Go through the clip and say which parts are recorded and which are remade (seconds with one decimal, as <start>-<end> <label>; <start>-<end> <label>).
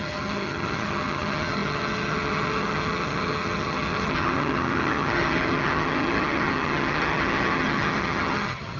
0.0-8.8 remade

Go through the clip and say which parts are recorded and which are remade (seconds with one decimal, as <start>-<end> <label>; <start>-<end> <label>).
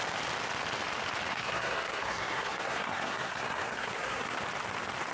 0.0-1.3 recorded; 1.3-4.4 remade; 4.4-5.1 recorded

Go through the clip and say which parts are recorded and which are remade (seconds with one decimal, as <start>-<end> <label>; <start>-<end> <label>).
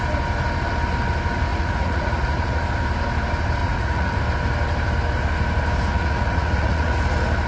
0.0-1.5 recorded; 1.5-2.6 remade; 2.6-3.6 recorded; 3.6-4.2 remade; 4.2-5.9 recorded; 5.9-7.0 remade; 7.0-7.5 recorded